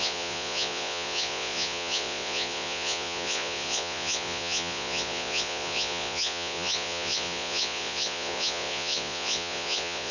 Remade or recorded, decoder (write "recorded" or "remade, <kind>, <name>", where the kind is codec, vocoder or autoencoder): remade, vocoder, Vocos